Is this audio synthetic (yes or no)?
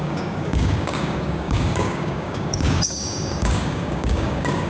yes